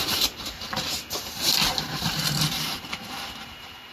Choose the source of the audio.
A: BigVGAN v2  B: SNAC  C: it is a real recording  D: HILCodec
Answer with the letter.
A